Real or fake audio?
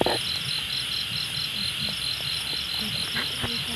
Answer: real